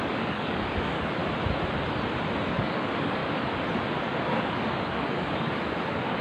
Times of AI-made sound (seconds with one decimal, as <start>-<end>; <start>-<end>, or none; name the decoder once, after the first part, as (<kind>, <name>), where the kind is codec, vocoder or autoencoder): 0.0-1.2 (codec, DAC); 2.5-3.2; 4.0-6.2